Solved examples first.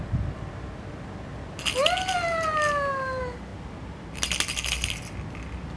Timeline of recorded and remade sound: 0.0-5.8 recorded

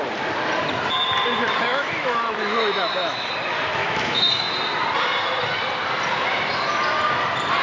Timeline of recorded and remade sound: 0.0-1.7 recorded; 1.7-3.3 remade; 3.3-3.8 recorded; 3.8-4.5 remade; 4.5-7.6 recorded

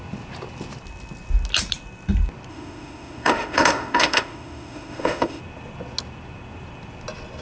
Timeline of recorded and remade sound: 0.0-2.5 recorded; 2.5-5.4 remade; 5.4-7.4 recorded

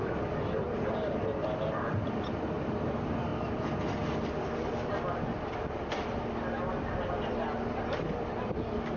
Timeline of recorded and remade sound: 0.0-9.0 recorded

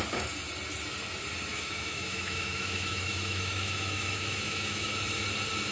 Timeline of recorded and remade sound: 0.0-1.5 recorded; 1.5-4.9 remade; 4.9-5.7 recorded

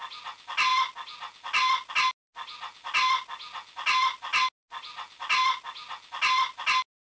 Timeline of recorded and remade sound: 0.0-7.2 recorded

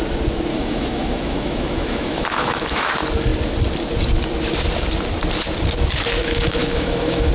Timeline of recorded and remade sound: 0.0-0.5 recorded; 0.5-2.9 remade; 2.9-6.2 recorded; 6.2-7.3 remade

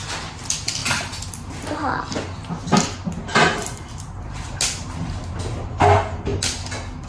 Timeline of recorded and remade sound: 0.0-7.1 recorded